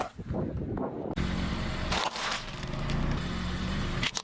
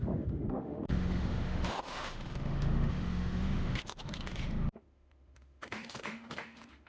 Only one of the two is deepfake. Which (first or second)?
second